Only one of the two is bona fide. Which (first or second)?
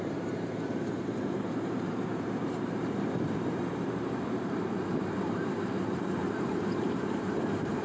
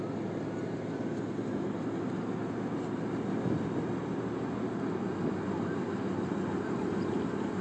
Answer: second